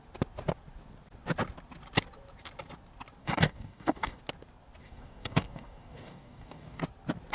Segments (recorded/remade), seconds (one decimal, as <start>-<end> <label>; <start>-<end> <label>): 0.0-3.2 recorded; 3.2-4.2 remade; 4.2-4.8 recorded; 4.8-6.8 remade; 6.8-7.3 recorded